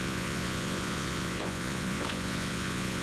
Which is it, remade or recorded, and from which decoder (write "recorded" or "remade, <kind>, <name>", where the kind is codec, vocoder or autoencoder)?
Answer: remade, vocoder, Vocos